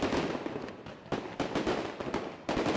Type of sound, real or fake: real